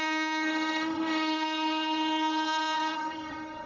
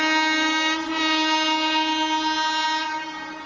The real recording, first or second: second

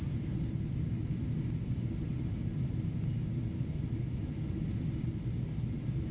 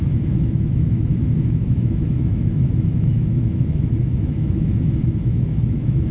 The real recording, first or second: first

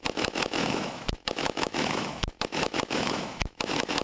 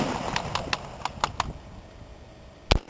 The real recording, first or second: second